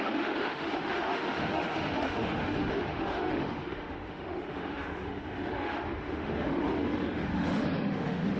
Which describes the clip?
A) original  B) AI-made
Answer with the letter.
B